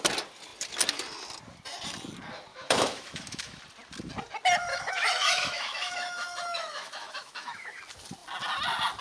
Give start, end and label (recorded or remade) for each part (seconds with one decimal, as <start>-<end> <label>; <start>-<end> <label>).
0.0-2.5 recorded; 2.5-3.6 remade; 3.6-4.7 recorded; 4.7-7.8 remade; 7.8-9.0 recorded